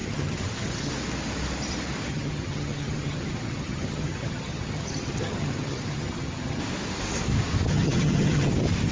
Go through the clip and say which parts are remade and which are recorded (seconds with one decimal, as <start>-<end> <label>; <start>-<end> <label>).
0.0-0.9 remade; 0.9-2.1 recorded; 2.1-6.6 remade; 6.6-7.7 recorded; 7.7-8.5 remade; 8.5-8.9 recorded